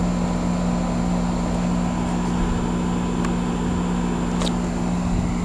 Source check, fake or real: real